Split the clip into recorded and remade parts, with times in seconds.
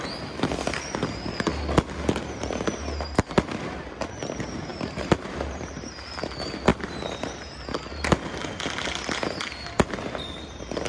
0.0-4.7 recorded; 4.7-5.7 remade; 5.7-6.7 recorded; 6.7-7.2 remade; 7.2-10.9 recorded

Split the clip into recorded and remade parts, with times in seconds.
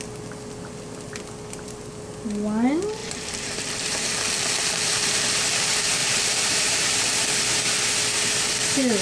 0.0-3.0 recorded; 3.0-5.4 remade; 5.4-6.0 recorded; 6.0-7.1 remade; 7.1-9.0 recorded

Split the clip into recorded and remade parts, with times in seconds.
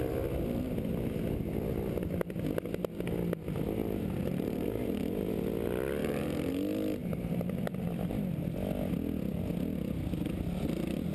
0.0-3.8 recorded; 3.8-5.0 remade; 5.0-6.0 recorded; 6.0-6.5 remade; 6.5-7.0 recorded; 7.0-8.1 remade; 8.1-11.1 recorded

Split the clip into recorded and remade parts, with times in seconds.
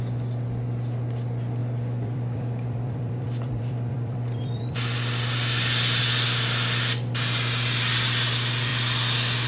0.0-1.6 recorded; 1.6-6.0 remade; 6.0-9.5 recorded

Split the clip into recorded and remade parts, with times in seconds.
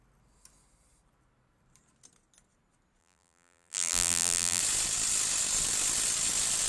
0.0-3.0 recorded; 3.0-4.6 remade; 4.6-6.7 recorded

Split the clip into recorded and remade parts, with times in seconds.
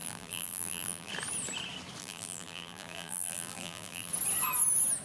0.0-1.1 remade; 1.1-2.0 recorded; 2.0-4.1 remade; 4.1-5.0 recorded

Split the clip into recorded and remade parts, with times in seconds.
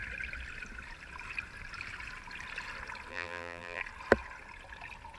0.0-3.1 recorded; 3.1-3.8 remade; 3.8-5.2 recorded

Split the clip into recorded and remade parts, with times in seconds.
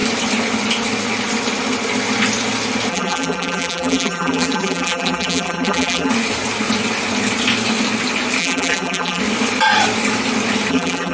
0.0-2.9 recorded; 2.9-6.1 remade; 6.1-8.4 recorded; 8.4-9.2 remade; 9.2-10.7 recorded; 10.7-11.1 remade